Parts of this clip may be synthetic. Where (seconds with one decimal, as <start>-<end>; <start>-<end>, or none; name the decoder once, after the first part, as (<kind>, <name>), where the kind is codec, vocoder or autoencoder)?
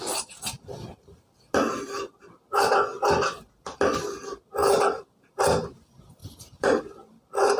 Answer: 4.6-5.4 (vocoder, BigVGAN v2); 6.2-6.8